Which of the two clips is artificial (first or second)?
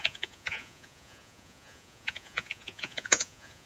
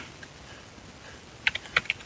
first